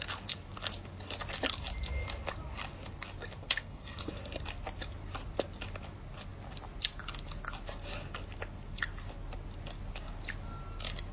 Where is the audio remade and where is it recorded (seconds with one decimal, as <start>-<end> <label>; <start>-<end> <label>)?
0.0-3.4 recorded; 3.4-4.1 remade; 4.1-11.1 recorded